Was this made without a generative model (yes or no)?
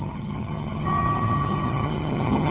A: no